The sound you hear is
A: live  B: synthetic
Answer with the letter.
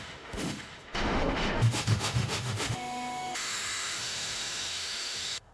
B